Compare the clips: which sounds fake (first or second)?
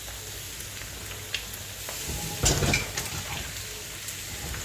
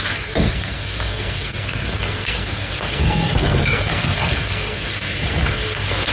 second